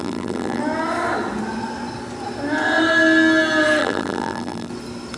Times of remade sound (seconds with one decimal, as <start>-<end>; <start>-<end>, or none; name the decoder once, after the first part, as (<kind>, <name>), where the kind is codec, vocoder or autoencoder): 0.0-0.6 (vocoder, BigVGAN v2); 3.8-4.7